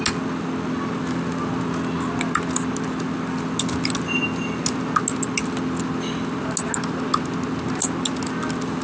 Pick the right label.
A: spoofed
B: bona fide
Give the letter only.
B